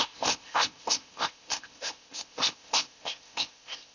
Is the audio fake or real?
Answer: fake